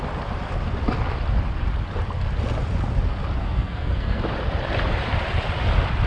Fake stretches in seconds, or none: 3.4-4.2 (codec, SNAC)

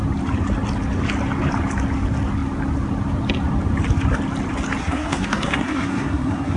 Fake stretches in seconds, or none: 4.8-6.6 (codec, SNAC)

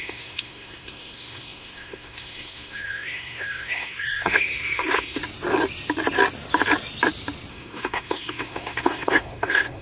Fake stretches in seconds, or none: 0.0-5.2 (codec, SNAC); 7.5-9.8